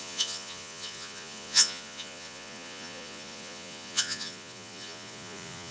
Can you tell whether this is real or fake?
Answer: fake